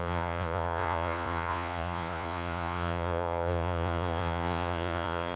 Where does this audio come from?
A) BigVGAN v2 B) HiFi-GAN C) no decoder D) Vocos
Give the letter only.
D